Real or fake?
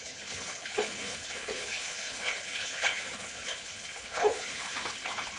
fake